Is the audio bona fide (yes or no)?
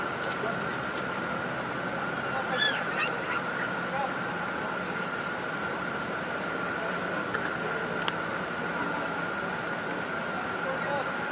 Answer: yes